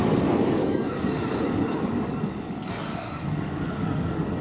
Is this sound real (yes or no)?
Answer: no